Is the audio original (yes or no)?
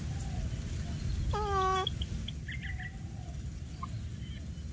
yes